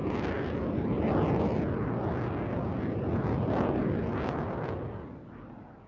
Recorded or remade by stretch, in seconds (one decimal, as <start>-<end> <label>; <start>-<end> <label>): 0.0-5.9 recorded